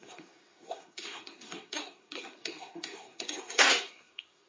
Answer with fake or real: fake